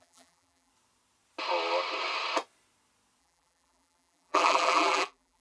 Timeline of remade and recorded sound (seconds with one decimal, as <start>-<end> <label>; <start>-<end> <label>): 0.0-0.7 remade; 0.7-3.2 recorded; 3.2-5.4 remade

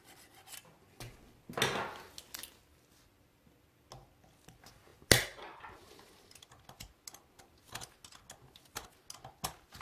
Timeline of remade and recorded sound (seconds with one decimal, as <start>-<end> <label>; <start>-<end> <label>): 0.0-9.8 recorded

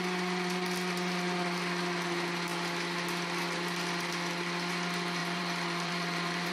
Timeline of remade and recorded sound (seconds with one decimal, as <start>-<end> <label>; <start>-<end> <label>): 0.0-5.2 recorded; 5.2-6.5 remade